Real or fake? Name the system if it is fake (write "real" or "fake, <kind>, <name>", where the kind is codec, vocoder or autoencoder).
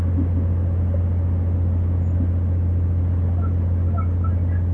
real